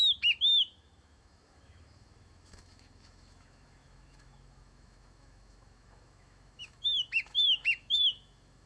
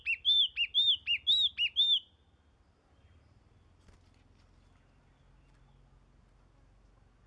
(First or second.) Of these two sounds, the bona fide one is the second